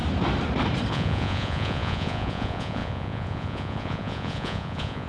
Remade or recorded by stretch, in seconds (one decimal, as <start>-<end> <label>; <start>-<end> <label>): 0.0-0.9 recorded; 0.9-5.1 remade